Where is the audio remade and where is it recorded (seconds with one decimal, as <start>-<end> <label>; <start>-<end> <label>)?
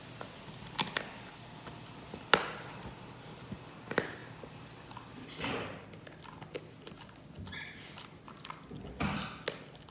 0.0-9.9 recorded